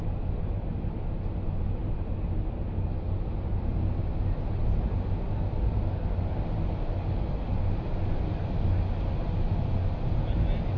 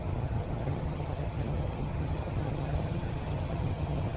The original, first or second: first